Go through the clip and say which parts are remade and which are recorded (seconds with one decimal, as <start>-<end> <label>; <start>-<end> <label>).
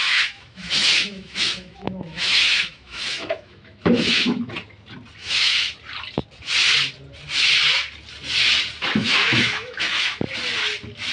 0.0-4.5 remade; 4.5-5.2 recorded; 5.2-5.7 remade; 5.7-9.0 recorded; 9.0-10.2 remade; 10.2-11.1 recorded